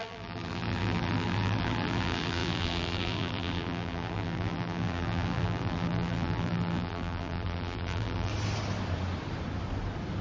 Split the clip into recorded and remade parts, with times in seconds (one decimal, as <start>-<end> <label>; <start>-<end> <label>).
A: 0.0-8.3 remade; 8.3-10.2 recorded